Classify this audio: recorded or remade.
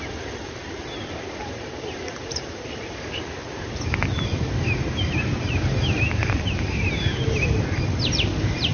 remade